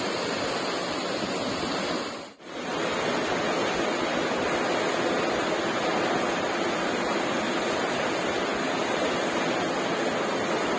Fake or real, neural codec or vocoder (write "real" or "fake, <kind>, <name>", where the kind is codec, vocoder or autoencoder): real